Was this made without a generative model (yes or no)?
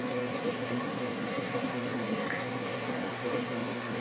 no